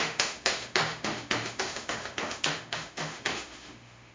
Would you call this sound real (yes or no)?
no